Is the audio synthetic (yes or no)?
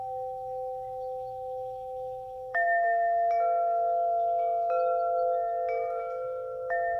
yes